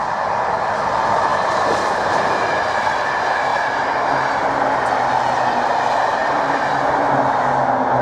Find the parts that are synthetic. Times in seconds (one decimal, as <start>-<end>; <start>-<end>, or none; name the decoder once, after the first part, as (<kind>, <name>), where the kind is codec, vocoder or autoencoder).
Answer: 3.5-4.4 (vocoder, BigVGAN v2); 6.2-6.7